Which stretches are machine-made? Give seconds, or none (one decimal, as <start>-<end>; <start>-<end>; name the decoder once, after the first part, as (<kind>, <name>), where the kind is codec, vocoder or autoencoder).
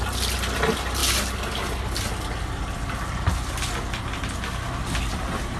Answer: none